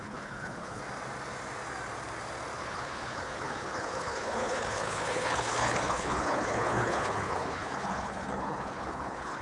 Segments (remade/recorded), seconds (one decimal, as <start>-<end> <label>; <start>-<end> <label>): 0.0-0.8 remade; 0.8-2.6 recorded; 2.6-9.4 remade